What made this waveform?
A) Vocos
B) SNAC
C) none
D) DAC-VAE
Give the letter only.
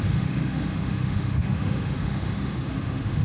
D